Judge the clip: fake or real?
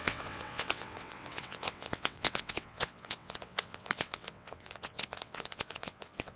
fake